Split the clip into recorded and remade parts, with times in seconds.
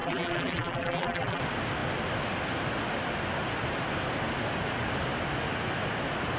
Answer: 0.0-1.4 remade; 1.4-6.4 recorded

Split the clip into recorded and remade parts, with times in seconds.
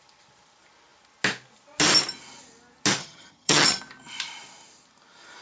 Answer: 0.0-3.0 recorded; 3.0-3.8 remade; 3.8-5.4 recorded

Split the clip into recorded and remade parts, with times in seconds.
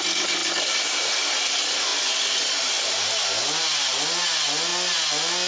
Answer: 0.0-5.5 recorded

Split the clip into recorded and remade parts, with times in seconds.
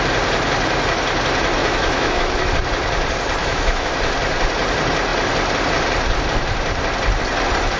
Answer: 0.0-1.6 recorded; 1.6-2.5 remade; 2.5-3.4 recorded; 3.4-3.9 remade; 3.9-7.8 recorded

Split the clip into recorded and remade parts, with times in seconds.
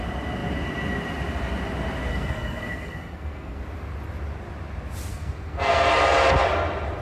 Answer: 0.0-2.1 recorded; 2.1-3.6 remade; 3.6-5.1 recorded; 5.1-5.9 remade; 5.9-7.0 recorded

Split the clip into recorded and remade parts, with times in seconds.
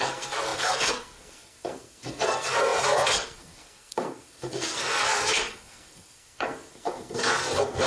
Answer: 0.0-7.9 remade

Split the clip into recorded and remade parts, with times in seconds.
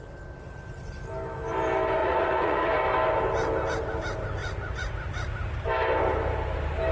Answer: 0.0-2.0 recorded; 2.0-2.8 remade; 2.8-4.4 recorded; 4.4-5.1 remade; 5.1-6.9 recorded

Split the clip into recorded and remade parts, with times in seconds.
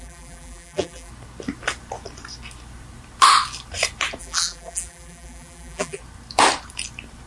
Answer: 0.0-1.1 remade; 1.1-4.2 recorded; 4.2-6.0 remade; 6.0-7.3 recorded